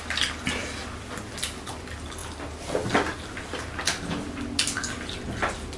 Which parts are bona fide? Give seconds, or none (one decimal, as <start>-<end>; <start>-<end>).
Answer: 0.0-5.8